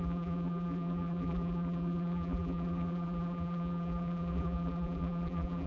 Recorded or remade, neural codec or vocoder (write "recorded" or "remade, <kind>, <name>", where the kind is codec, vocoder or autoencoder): remade, vocoder, BigVGAN v2